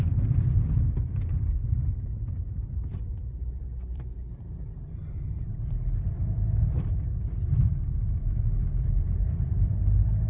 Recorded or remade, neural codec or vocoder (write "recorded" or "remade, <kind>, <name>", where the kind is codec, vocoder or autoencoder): remade, vocoder, BigVGAN v2